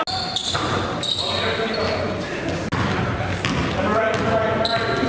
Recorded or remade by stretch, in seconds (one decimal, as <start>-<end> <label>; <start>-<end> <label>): 0.0-5.1 recorded